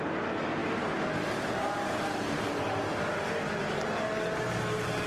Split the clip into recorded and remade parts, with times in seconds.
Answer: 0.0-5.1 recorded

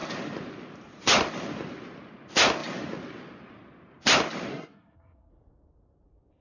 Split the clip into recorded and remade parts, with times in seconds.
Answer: 0.0-4.5 recorded; 4.5-5.3 remade; 5.3-6.4 recorded

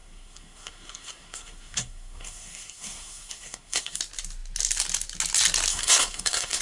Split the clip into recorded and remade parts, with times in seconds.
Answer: 0.0-4.0 remade; 4.0-5.7 recorded; 5.7-6.6 remade

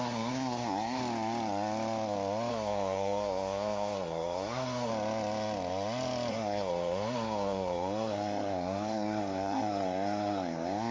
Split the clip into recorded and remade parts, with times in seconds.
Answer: 0.0-1.0 remade; 1.0-2.5 recorded; 2.5-4.9 remade; 4.9-6.3 recorded; 6.3-10.9 remade